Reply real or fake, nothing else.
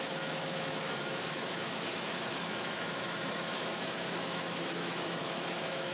fake